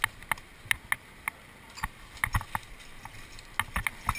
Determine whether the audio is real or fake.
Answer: real